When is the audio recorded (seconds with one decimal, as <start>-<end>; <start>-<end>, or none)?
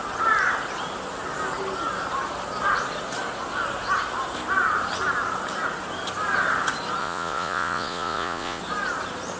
0.0-7.0; 8.6-9.4